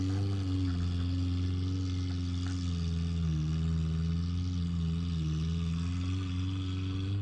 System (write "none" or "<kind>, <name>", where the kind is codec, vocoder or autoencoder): none